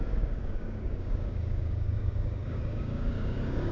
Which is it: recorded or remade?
remade